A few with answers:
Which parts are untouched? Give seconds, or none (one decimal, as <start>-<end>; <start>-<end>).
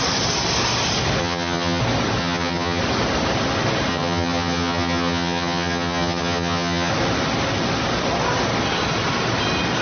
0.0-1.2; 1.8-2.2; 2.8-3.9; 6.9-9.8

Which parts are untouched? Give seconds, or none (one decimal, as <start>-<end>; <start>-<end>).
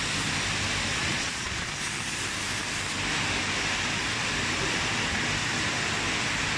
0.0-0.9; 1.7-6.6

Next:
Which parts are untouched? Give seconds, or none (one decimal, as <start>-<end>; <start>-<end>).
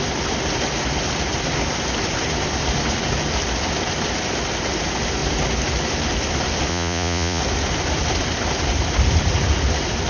0.0-6.7; 7.4-10.1